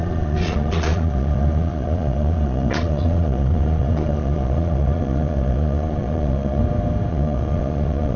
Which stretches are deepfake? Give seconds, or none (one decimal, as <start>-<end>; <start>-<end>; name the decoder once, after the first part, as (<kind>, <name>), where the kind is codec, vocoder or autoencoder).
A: 0.0-6.6 (vocoder, Vocos); 7.1-8.2